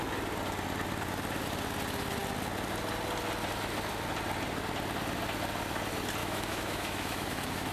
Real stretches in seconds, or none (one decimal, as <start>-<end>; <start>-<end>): 0.0-6.2